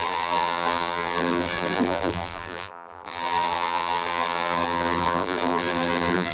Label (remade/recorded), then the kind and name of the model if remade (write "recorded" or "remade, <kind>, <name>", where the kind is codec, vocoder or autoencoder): remade, vocoder, BigVGAN v2